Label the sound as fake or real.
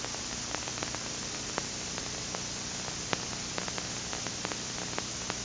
real